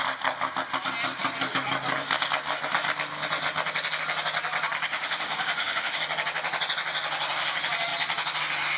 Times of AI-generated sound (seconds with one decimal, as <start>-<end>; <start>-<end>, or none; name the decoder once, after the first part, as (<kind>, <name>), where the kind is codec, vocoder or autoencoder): 4.9-6.0 (autoencoder, DAC-VAE)